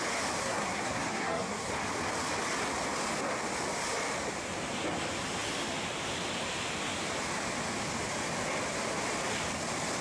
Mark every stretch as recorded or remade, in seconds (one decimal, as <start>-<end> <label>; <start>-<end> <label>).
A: 0.0-0.4 recorded; 0.4-1.7 remade; 1.7-10.0 recorded